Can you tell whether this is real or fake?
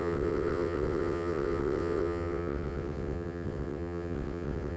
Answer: fake